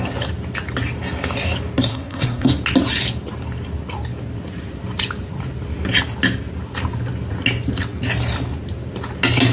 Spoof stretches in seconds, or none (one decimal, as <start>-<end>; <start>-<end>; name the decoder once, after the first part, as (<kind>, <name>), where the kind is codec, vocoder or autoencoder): 1.9-2.5 (codec, SNAC)